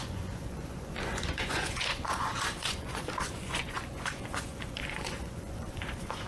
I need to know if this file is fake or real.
fake